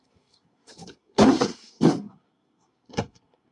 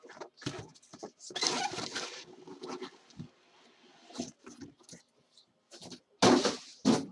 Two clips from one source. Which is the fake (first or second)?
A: first